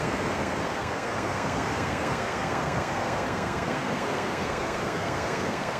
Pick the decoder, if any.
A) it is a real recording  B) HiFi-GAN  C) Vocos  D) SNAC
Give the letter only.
D